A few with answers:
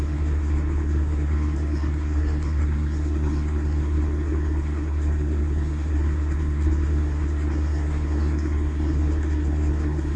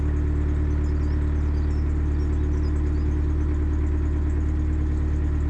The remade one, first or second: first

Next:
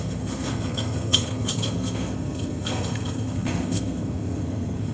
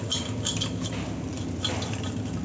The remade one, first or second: first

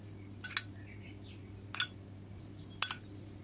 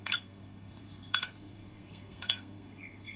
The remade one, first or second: second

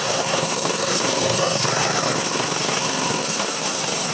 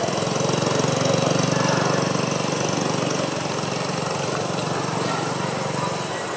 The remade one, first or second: first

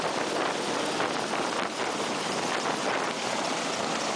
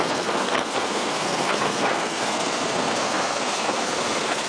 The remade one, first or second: second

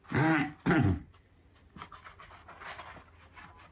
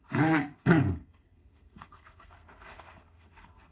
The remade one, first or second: second